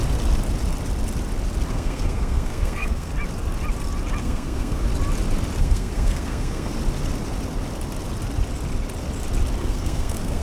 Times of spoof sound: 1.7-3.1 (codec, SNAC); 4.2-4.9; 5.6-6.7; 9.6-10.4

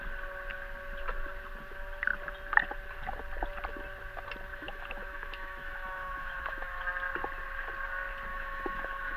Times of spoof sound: 4.5-6.8 (autoencoder, DAC-VAE); 8.3-9.2

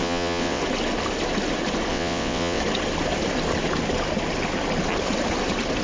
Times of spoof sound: 0.0-0.6 (vocoder, WaveNeXt); 1.9-2.6

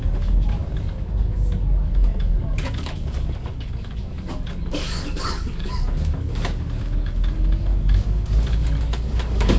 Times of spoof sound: 0.0-9.6 (codec, DAC)